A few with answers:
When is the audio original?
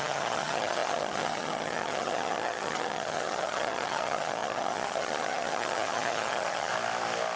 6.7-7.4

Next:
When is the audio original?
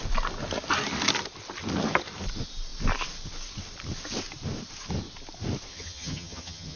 0.0-5.7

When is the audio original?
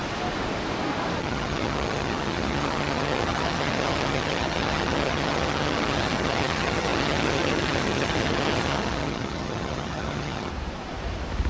0.0-1.2; 10.5-11.5